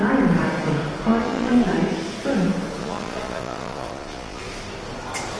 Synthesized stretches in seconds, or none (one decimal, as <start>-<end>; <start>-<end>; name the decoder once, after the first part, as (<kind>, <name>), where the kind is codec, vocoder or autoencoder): 1.1-1.7 (vocoder, Vocos); 2.8-4.4